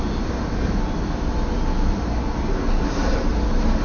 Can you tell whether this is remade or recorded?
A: recorded